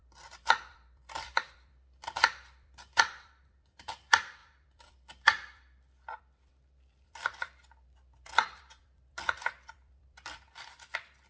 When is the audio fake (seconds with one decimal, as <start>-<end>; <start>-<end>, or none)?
0.0-11.3